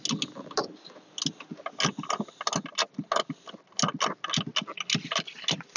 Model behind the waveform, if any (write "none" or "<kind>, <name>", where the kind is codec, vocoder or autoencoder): none